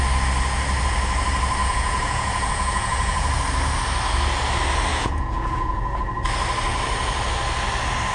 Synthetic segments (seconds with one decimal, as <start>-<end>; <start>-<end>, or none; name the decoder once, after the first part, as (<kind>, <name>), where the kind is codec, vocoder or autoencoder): 1.6-3.3 (vocoder, Vocos); 4.9-6.0